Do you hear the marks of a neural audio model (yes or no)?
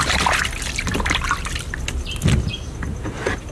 no